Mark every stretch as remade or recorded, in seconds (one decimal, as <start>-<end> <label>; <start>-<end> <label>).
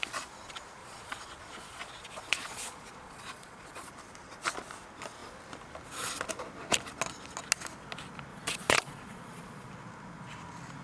0.0-0.8 recorded; 0.8-3.9 remade; 3.9-8.3 recorded; 8.3-9.7 remade; 9.7-10.8 recorded